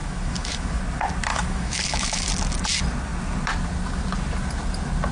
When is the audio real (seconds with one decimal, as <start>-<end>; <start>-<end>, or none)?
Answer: 0.8-1.3; 2.3-5.1